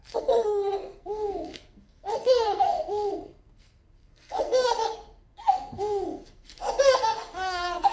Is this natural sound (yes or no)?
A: no